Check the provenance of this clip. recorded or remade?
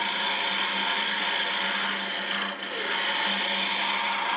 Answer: recorded